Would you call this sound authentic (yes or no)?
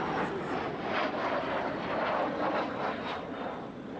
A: yes